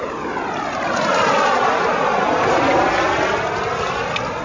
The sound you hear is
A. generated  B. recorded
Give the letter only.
B